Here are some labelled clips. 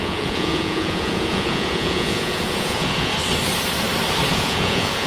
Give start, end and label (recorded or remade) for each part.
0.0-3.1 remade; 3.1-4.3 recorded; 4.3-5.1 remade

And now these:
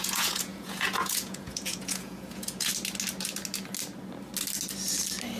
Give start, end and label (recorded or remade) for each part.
0.0-2.7 remade; 2.7-5.4 recorded

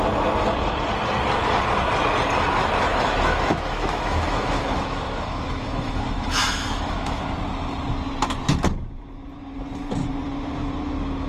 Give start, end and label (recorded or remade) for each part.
0.0-2.9 recorded; 2.9-7.2 remade; 7.2-11.3 recorded

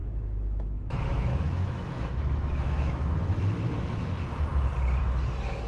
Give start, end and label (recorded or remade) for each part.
0.0-3.4 remade; 3.4-5.7 recorded